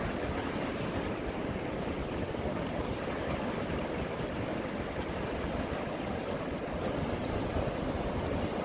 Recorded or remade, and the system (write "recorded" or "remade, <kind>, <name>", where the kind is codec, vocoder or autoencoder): recorded